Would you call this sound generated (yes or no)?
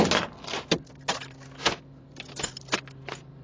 no